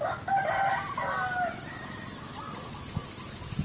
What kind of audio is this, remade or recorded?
recorded